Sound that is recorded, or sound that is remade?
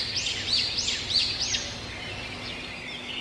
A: recorded